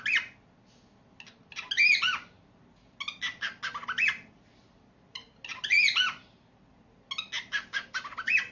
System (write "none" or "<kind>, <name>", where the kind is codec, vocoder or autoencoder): none